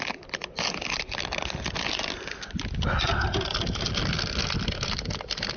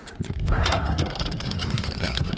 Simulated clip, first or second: second